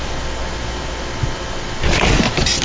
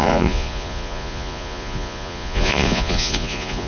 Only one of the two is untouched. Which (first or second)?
first